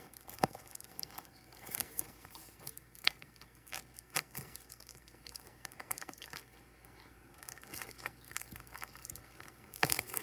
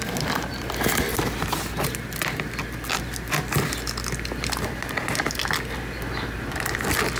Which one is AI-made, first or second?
first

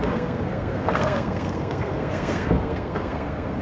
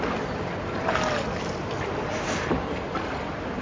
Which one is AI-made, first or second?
first